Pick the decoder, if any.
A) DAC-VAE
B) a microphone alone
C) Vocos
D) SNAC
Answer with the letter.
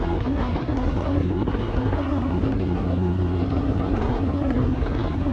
D